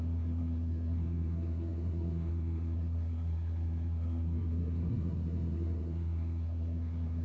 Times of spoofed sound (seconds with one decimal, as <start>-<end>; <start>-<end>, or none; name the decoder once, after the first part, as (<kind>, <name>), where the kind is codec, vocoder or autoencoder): 0.0-7.2 (codec, SNAC)